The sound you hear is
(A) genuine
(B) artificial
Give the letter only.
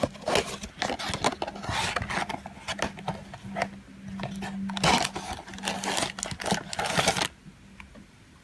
A